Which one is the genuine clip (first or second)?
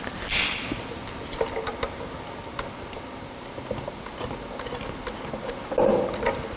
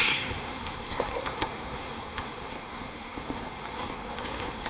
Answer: first